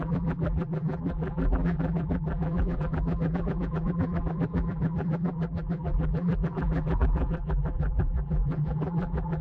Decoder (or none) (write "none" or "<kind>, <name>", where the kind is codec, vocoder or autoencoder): vocoder, BigVGAN v2